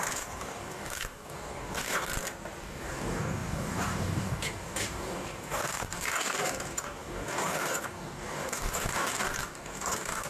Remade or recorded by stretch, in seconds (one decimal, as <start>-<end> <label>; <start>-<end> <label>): 0.0-2.1 remade; 2.1-2.6 recorded; 2.6-10.3 remade